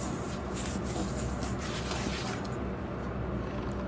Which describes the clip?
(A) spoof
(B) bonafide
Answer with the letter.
B